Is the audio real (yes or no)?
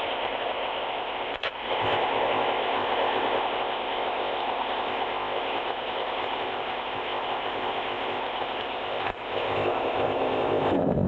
no